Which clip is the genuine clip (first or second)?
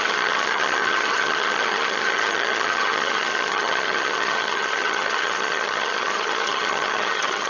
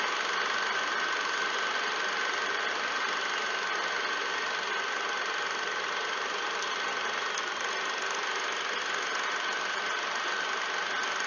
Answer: second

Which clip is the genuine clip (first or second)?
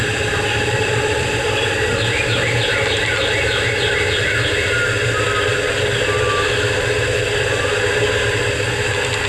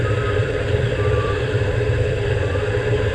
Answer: first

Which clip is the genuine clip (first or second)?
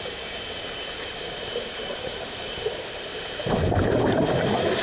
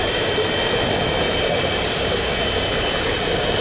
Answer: second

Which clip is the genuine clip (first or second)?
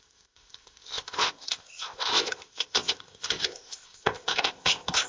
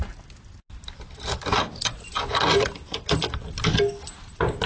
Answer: second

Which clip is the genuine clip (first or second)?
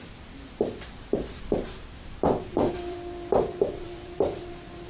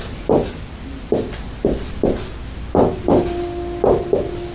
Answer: second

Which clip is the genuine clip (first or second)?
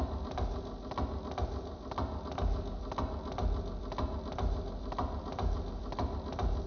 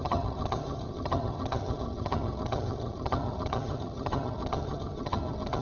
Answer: first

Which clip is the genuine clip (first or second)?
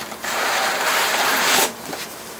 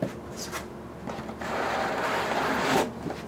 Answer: second